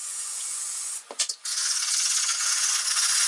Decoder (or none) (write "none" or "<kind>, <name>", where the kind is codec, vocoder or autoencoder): vocoder, Vocos